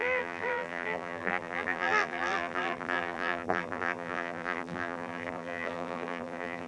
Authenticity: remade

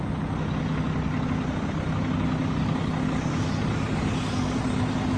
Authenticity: recorded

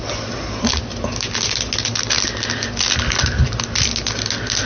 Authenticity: recorded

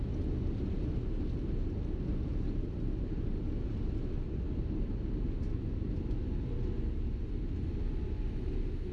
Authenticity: recorded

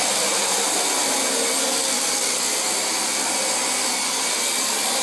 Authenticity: recorded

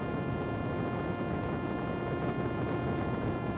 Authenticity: recorded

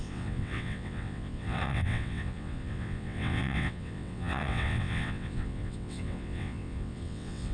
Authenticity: remade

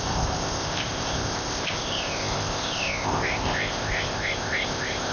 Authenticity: remade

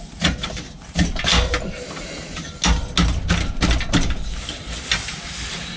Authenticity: recorded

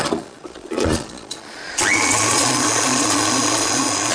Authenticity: remade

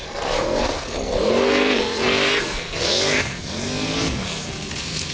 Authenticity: remade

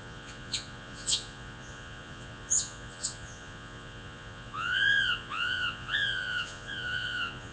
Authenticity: remade